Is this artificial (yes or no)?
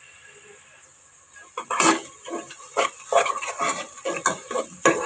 no